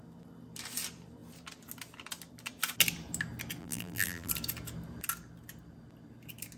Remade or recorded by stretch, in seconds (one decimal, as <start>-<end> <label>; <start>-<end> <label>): 0.0-3.6 recorded; 3.6-4.3 remade; 4.3-6.6 recorded